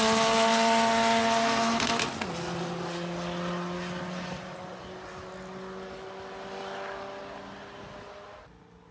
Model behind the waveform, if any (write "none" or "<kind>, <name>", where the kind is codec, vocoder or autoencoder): none